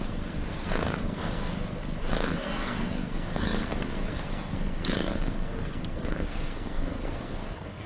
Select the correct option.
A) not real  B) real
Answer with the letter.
A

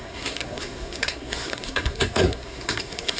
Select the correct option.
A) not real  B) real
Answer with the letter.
A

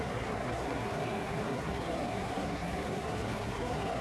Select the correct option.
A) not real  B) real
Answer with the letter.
A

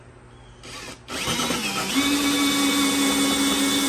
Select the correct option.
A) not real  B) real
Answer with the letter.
B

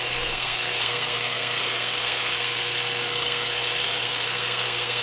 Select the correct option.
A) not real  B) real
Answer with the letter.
A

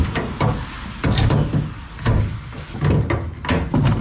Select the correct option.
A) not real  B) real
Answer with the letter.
B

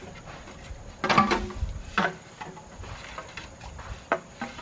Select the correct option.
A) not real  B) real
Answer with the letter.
B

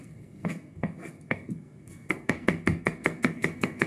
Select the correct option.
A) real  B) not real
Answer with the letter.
B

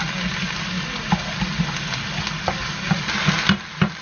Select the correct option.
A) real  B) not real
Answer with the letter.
A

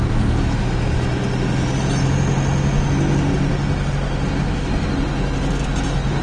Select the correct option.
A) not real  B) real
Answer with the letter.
B